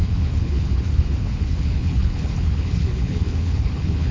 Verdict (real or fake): fake